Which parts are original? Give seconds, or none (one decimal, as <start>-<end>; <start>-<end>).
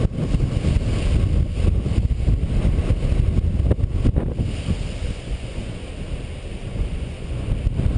0.0-5.0; 5.9-6.7; 7.5-8.0